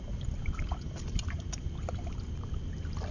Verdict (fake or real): real